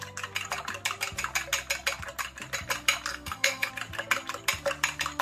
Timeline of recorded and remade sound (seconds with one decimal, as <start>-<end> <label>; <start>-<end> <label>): 0.0-3.1 recorded; 3.1-3.7 remade; 3.7-5.2 recorded